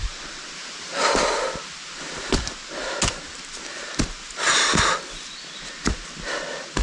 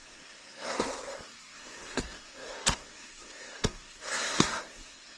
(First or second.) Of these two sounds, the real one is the first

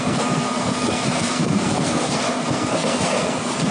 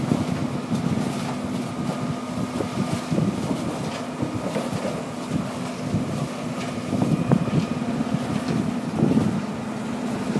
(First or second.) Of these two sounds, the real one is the second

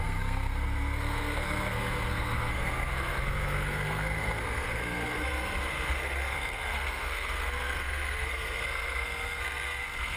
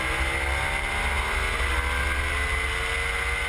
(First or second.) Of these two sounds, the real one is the second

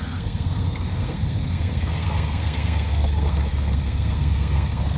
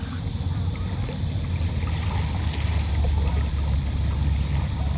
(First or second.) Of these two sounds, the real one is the second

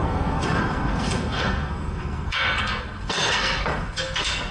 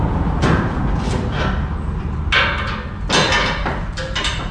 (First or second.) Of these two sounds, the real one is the second